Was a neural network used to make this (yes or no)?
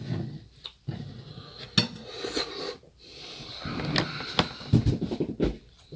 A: no